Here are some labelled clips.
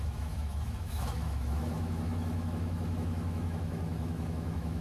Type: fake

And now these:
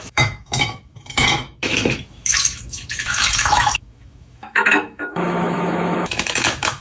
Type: fake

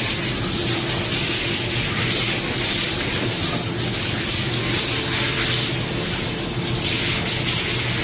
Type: real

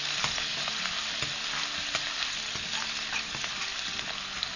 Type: real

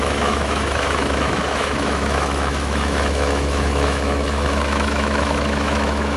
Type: fake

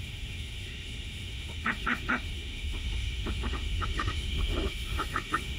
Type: fake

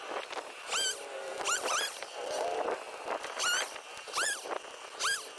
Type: real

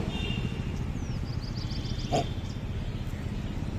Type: real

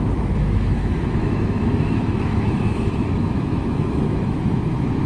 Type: fake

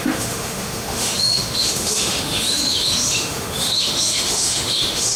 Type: fake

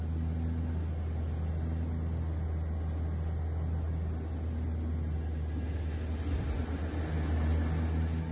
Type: real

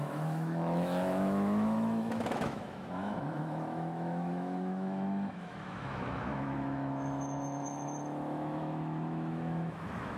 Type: fake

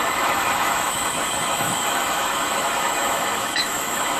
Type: fake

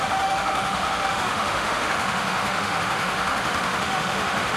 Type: fake